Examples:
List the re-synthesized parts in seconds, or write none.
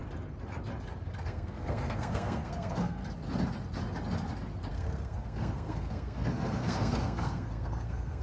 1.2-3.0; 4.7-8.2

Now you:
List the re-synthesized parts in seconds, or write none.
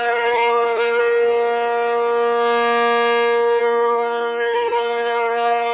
0.0-1.0; 3.6-5.7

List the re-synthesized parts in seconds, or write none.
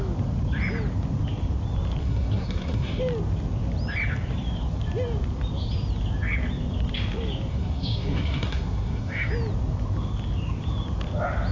2.0-3.0; 7.5-9.3